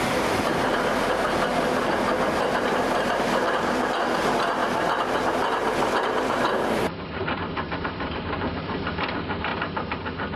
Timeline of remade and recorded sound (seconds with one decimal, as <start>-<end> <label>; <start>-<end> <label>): 0.0-1.5 remade; 1.5-2.4 recorded; 2.4-4.6 remade; 4.6-6.2 recorded; 6.2-10.4 remade